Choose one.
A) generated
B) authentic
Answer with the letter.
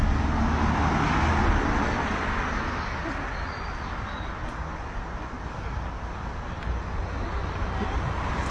B